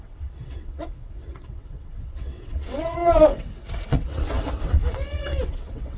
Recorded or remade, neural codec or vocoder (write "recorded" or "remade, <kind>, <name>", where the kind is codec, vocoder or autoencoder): remade, vocoder, WaveNeXt